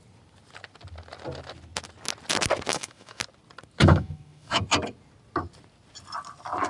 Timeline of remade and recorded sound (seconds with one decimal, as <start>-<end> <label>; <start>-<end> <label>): 0.0-2.7 recorded; 2.7-3.2 remade; 3.2-3.8 recorded; 3.8-4.6 remade; 4.6-6.7 recorded